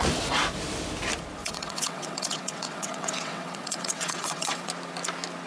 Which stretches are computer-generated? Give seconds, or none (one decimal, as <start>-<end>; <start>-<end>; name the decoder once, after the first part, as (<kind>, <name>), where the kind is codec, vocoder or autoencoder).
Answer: 1.4-4.7 (vocoder, WaveNeXt)